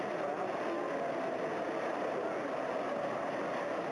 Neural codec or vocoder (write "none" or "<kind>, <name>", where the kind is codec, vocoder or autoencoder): none